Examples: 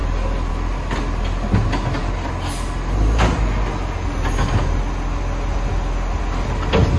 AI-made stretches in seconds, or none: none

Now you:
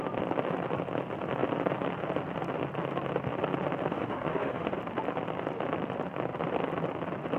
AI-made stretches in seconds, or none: 3.9-4.8 (autoencoder, DAC-VAE)

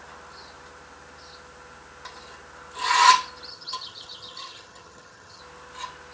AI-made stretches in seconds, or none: 3.5-5.4 (vocoder, HiFi-GAN)

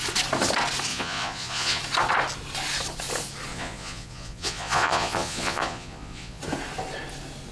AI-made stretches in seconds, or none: 0.9-1.8 (vocoder, Vocos); 3.5-6.4